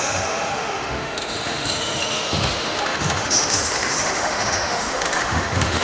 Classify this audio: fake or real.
fake